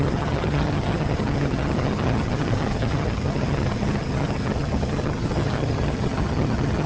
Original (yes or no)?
no